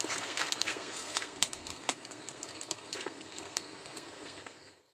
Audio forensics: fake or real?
fake